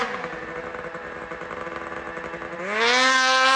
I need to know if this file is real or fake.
real